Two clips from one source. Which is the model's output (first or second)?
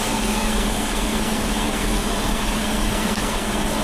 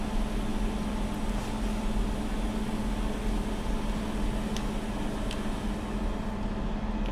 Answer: first